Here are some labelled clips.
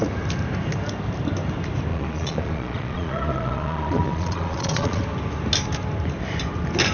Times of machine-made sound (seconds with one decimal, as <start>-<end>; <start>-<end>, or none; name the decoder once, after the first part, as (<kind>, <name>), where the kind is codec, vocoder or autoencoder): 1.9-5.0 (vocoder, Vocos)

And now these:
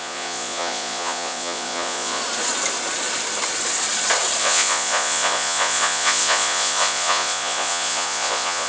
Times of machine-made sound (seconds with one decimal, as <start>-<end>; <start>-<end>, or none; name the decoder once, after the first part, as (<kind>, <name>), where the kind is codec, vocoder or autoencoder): 0.0-2.2 (vocoder, Vocos); 4.4-8.7

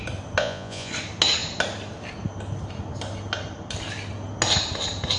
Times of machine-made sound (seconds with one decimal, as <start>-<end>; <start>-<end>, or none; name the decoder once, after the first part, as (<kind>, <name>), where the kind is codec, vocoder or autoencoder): 0.4-0.9 (vocoder, Vocos)

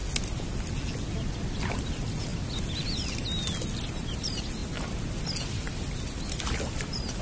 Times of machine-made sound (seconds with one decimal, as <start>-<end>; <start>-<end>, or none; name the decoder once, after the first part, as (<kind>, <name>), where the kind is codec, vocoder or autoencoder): none

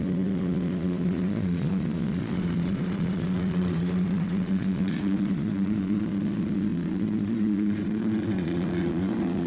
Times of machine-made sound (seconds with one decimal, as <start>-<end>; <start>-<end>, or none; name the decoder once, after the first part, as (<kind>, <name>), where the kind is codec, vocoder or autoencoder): 0.0-9.5 (vocoder, Vocos)